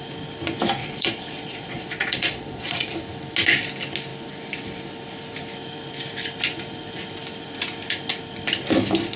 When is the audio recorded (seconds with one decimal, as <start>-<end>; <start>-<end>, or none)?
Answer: 0.0-0.8; 2.9-9.2